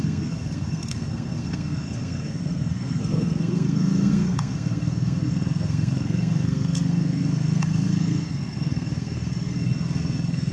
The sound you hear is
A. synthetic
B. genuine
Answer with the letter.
A